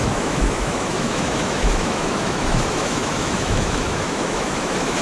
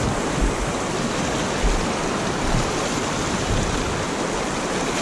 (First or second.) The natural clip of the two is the second